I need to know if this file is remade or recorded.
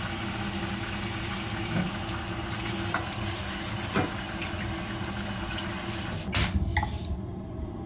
recorded